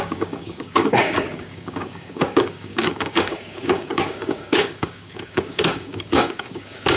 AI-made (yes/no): yes